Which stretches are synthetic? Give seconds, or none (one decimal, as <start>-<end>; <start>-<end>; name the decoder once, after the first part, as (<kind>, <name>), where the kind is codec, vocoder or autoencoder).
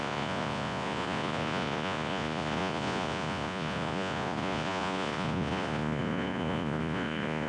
0.0-7.5 (vocoder, Vocos)